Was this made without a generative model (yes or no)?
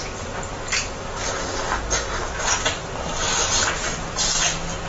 yes